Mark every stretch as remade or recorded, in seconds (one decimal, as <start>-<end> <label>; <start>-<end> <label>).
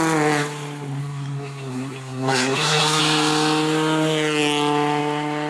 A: 0.0-1.0 recorded; 1.0-3.0 remade; 3.0-5.5 recorded